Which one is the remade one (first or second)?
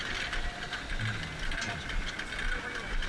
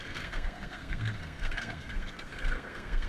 second